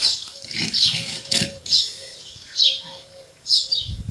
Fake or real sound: fake